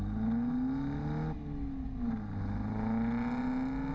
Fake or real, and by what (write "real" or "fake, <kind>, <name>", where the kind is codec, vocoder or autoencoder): real